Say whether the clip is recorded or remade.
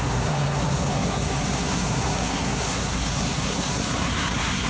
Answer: remade